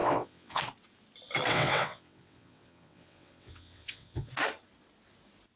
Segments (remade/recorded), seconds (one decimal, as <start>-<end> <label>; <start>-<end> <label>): 0.0-0.6 remade; 0.6-1.5 recorded; 1.5-4.3 remade; 4.3-5.6 recorded

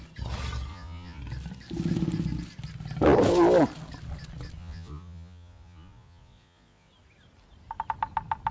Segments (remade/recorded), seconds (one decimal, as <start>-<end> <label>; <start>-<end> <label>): 0.0-0.7 recorded; 0.7-1.2 remade; 1.2-4.6 recorded; 4.6-6.9 remade; 6.9-8.5 recorded